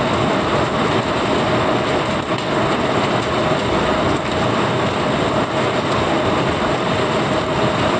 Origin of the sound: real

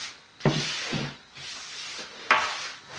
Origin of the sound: real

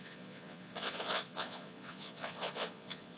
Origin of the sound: fake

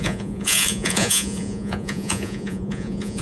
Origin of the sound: fake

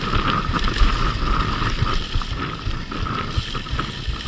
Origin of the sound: real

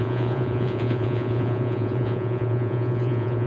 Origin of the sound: fake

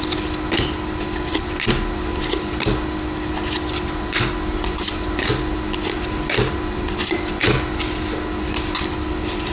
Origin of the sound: real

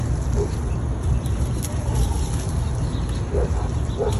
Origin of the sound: real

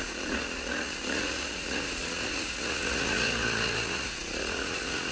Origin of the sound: fake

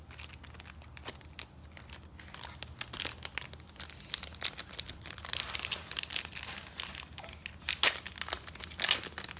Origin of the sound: real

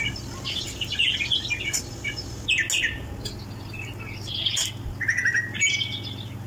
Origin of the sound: real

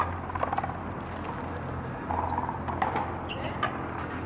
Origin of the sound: real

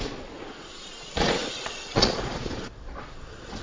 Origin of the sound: fake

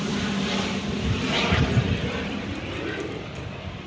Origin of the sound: real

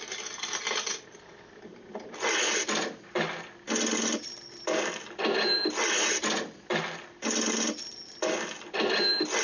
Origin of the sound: real